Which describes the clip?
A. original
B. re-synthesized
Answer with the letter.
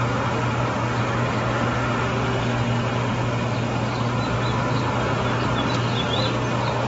A